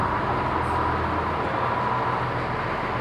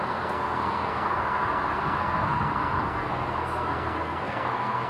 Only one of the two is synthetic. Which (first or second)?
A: second